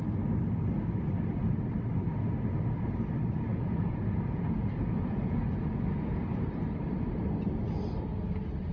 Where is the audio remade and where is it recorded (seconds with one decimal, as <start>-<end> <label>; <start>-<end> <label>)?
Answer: 0.0-3.5 recorded; 3.5-6.1 remade; 6.1-8.7 recorded